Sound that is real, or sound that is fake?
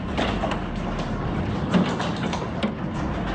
real